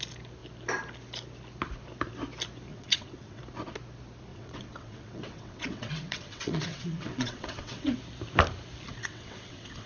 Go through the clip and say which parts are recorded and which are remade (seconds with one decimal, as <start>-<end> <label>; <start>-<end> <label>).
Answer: 0.0-2.7 recorded; 2.7-3.4 remade; 3.4-4.3 recorded; 4.3-8.0 remade; 8.0-9.0 recorded; 9.0-9.9 remade